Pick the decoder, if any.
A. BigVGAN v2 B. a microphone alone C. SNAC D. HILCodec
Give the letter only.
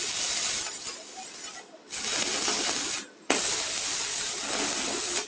B